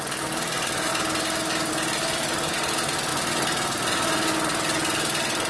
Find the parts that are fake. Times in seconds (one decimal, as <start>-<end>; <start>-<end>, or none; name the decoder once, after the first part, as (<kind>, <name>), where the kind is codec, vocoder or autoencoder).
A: none